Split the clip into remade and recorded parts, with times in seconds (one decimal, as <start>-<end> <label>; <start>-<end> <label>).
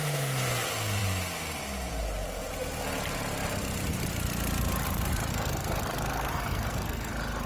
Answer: 0.0-5.3 recorded; 5.3-7.1 remade; 7.1-7.5 recorded